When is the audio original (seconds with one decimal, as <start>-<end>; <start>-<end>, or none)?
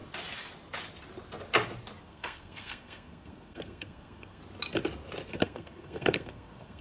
0.0-2.0; 4.4-5.3